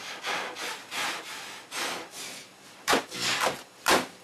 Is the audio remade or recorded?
remade